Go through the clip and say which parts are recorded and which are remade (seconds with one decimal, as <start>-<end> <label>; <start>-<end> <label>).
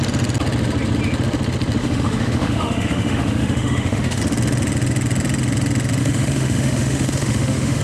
0.0-1.8 recorded; 1.8-4.2 remade; 4.2-6.0 recorded; 6.0-7.8 remade